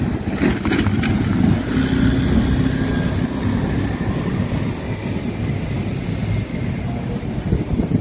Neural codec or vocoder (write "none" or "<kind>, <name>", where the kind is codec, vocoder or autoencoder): none